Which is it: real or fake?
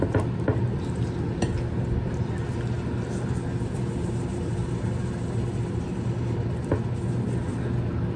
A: real